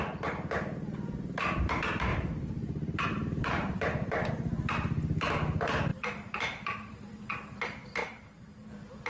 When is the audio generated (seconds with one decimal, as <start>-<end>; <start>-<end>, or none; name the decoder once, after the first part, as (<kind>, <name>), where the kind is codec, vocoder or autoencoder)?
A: 2.1-4.3 (vocoder, BigVGAN v2); 5.9-7.1; 8.0-8.7